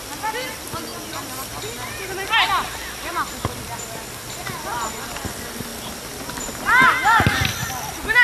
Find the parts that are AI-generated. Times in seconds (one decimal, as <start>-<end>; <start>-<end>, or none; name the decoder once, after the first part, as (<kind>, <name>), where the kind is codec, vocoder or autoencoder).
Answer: none